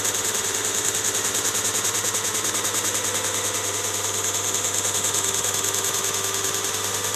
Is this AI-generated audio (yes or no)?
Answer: yes